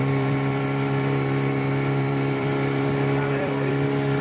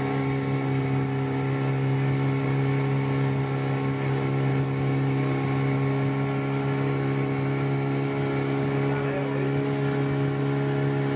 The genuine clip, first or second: second